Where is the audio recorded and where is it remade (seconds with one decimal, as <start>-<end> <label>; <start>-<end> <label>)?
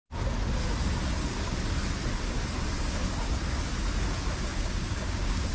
0.0-4.5 recorded; 4.5-5.5 remade